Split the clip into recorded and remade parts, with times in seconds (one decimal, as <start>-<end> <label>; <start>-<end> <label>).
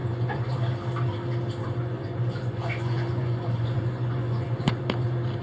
0.0-0.5 remade; 0.5-1.8 recorded; 1.8-4.8 remade; 4.8-5.4 recorded